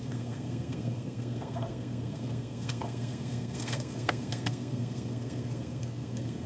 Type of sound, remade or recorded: remade